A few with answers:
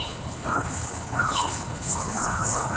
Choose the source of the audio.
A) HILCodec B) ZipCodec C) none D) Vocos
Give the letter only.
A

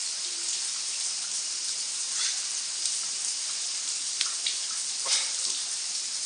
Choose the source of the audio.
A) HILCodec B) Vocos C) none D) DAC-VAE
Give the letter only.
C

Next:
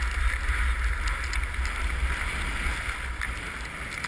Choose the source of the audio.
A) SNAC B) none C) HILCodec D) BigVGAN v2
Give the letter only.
B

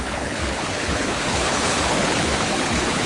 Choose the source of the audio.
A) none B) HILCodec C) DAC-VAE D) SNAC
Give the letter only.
B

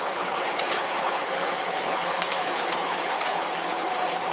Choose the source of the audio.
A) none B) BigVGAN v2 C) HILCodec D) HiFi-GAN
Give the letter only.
C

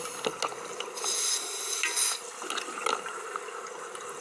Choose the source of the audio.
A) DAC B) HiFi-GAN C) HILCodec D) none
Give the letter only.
D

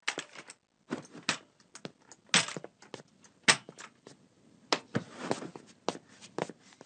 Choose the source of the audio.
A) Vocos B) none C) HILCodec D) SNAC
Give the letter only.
B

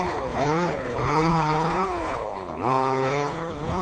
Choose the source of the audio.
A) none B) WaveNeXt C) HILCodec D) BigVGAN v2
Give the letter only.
C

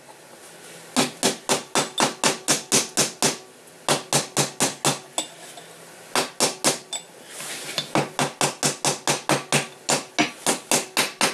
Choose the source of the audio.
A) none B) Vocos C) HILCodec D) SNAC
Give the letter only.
A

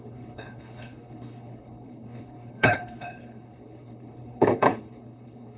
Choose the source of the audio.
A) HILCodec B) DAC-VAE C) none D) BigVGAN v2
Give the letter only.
A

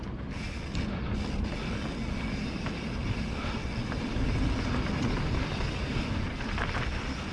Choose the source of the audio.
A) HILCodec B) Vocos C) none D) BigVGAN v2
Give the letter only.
C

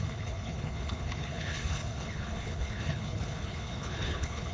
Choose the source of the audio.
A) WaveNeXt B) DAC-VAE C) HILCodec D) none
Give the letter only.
C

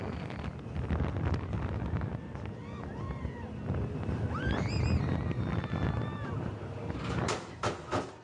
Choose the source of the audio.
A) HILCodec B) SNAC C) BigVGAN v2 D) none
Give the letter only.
D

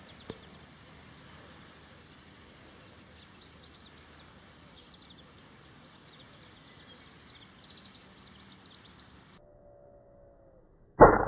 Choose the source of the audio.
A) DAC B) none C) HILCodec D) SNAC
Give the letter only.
B